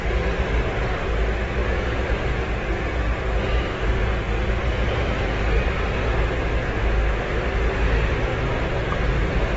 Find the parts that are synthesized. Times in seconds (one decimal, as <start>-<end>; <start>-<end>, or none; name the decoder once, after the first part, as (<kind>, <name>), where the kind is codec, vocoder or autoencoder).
6.8-7.4 (autoencoder, DAC-VAE)